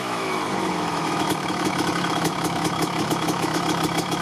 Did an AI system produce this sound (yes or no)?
yes